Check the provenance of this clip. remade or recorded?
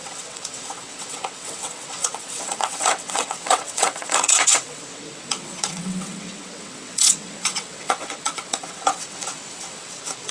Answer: remade